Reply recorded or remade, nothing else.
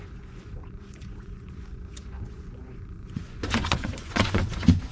remade